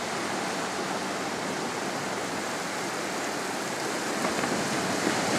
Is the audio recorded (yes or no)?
yes